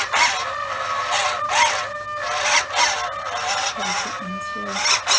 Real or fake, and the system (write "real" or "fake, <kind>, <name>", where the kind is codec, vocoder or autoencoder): real